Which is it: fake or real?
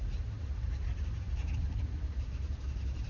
fake